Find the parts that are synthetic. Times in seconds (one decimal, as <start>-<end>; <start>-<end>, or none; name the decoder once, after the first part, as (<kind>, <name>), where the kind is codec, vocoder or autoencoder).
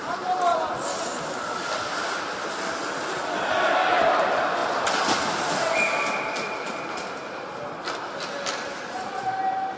none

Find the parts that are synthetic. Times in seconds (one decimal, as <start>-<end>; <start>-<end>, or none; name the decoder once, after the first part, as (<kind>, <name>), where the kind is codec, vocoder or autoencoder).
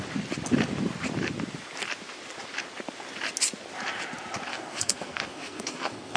4.5-6.2 (codec, SNAC)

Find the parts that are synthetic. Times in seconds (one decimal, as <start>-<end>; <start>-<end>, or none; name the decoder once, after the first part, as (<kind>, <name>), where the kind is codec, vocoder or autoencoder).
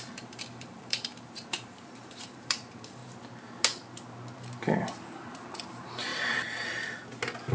0.0-3.0 (vocoder, BigVGAN v2); 5.6-6.1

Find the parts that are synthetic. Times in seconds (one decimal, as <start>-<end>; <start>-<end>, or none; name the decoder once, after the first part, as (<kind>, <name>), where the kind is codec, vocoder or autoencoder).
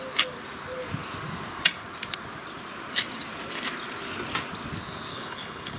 5.1-5.8 (codec, HILCodec)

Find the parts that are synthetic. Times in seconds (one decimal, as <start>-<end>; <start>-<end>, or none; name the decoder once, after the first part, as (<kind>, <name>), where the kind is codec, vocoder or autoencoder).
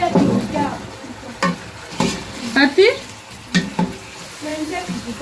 none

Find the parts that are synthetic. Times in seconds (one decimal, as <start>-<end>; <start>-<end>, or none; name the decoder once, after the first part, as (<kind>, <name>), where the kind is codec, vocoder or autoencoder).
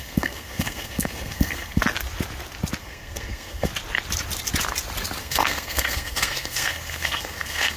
0.0-1.8 (codec, SNAC); 2.8-3.7; 5.2-7.8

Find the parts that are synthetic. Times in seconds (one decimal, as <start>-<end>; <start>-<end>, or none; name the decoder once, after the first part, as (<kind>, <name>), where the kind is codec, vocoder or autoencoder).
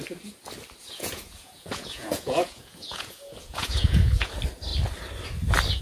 0.8-4.3 (vocoder, Vocos)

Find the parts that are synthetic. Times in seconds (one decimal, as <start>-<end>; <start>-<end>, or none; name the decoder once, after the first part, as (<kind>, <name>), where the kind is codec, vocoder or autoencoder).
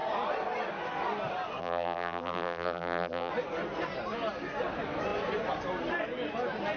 1.6-3.3 (vocoder, BigVGAN v2)